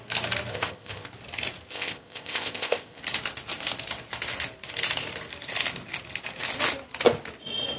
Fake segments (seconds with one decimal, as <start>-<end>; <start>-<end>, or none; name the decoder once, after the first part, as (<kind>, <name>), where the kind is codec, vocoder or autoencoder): 0.5-1.1 (codec, ZipCodec); 1.7-3.0